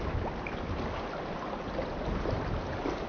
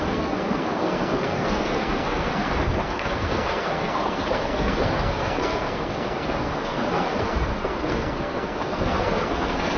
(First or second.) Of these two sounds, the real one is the first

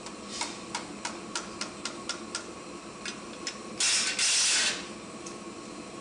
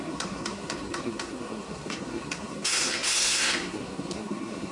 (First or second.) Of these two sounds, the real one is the first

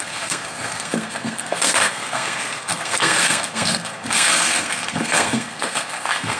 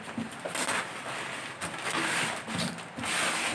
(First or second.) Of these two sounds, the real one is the second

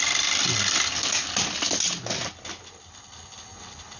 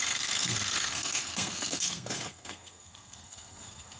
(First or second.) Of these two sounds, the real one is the first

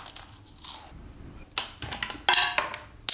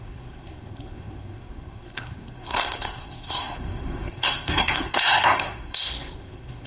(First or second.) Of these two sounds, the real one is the first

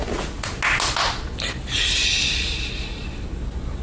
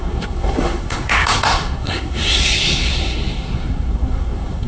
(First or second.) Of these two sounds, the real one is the first